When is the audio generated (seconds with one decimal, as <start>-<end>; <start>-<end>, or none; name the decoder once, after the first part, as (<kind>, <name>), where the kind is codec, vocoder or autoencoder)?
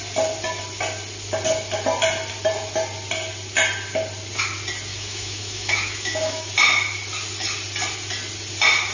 4.9-6.5 (autoencoder, DAC-VAE)